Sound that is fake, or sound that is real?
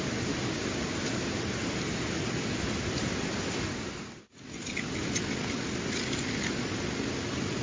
real